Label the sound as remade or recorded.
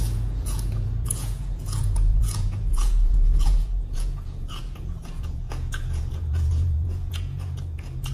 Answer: remade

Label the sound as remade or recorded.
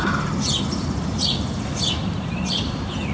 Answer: recorded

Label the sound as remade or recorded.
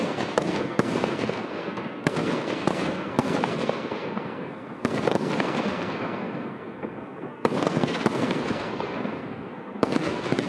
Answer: remade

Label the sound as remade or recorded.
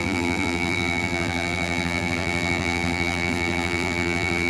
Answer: remade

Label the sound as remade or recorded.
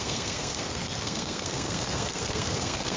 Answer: remade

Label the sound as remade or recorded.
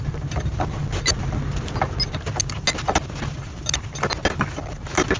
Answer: recorded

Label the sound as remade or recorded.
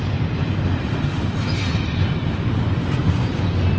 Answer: recorded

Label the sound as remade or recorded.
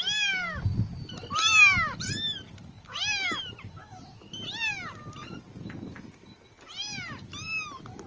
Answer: recorded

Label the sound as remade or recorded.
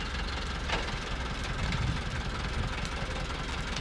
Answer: recorded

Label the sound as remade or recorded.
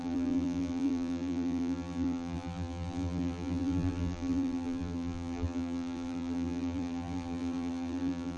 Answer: remade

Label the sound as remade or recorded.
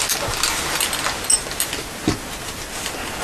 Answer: recorded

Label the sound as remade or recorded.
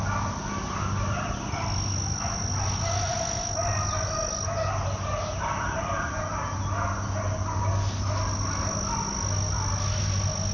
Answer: recorded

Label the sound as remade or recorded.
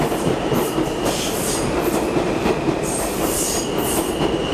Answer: remade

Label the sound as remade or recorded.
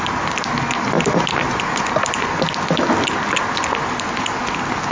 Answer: recorded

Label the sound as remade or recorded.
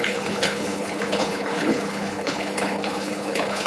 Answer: remade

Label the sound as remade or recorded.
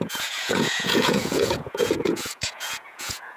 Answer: remade